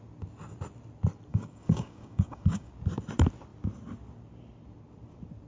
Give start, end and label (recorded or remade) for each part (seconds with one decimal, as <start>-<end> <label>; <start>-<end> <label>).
0.0-1.3 recorded; 1.3-2.7 remade; 2.7-5.5 recorded